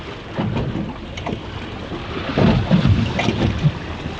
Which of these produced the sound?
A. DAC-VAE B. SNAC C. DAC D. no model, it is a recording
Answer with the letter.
D